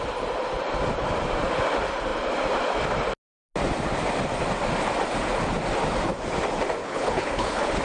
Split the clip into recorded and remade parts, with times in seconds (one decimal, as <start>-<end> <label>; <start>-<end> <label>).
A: 0.0-6.8 recorded; 6.8-7.8 remade